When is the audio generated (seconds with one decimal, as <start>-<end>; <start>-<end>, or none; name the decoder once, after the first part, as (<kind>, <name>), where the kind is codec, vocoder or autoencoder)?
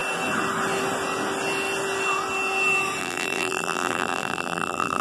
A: 3.0-5.0 (vocoder, BigVGAN v2)